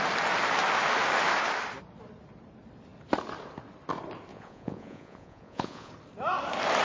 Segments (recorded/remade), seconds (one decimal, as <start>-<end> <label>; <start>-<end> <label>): 0.0-4.3 recorded; 4.3-5.9 remade; 5.9-6.8 recorded